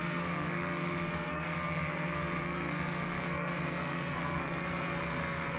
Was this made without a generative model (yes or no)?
no